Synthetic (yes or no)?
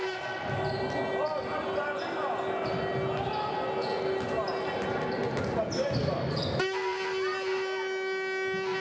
no